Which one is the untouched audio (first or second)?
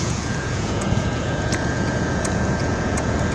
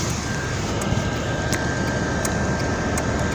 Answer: second